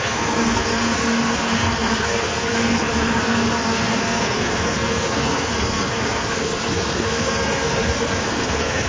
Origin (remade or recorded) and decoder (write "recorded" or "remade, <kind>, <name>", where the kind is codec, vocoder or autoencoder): remade, codec, SNAC